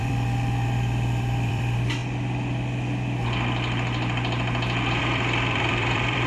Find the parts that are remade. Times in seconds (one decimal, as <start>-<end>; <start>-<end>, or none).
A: 0.0-2.0; 5.0-6.3